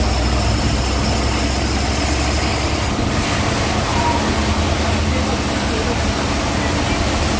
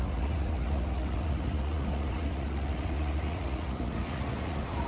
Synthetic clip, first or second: second